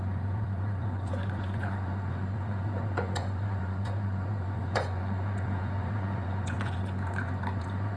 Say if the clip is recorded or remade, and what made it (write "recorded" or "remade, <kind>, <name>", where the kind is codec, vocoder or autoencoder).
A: remade, vocoder, Vocos